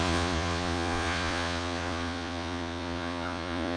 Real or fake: fake